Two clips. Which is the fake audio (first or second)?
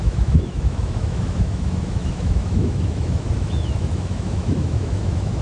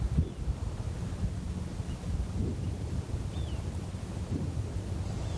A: first